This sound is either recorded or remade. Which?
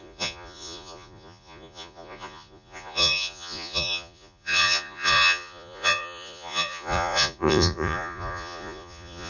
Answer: remade